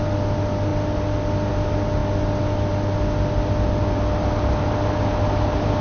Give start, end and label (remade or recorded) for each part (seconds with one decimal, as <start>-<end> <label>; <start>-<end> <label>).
0.0-5.8 recorded